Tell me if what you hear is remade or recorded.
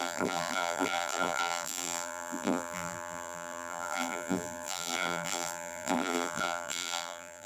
remade